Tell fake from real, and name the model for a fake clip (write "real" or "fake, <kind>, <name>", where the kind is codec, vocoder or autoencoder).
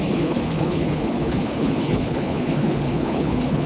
fake, codec, HILCodec